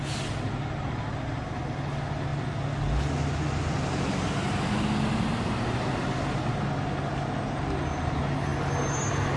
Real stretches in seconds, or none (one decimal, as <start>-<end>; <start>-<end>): 0.0-9.4